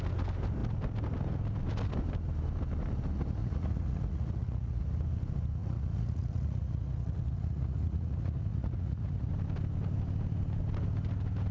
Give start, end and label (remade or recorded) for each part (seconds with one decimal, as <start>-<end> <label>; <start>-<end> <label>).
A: 0.0-3.4 recorded; 3.4-4.8 remade; 4.8-5.6 recorded; 5.6-9.3 remade; 9.3-11.5 recorded

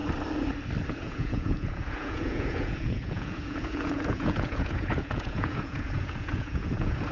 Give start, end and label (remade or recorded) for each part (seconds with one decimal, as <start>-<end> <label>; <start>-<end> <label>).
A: 0.0-0.9 recorded; 0.9-7.1 remade

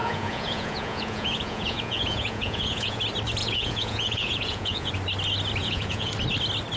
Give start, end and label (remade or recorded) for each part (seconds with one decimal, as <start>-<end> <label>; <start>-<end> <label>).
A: 0.0-3.0 remade; 3.0-3.4 recorded; 3.4-4.9 remade; 4.9-5.6 recorded; 5.6-6.1 remade; 6.1-6.8 recorded

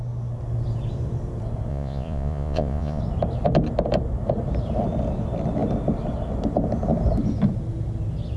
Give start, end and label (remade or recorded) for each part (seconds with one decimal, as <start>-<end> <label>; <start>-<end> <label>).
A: 0.0-1.7 recorded; 1.7-3.0 remade; 3.0-8.4 recorded

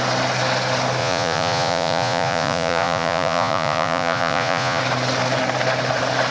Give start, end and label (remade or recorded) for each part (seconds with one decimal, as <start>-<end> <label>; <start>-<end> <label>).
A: 0.0-1.0 recorded; 1.0-4.8 remade; 4.8-6.3 recorded